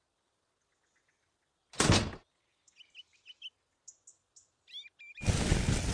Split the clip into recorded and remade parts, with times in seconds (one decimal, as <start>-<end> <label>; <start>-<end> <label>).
0.0-5.9 recorded